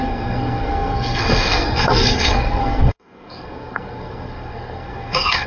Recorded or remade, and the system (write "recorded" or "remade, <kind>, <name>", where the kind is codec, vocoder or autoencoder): remade, codec, SNAC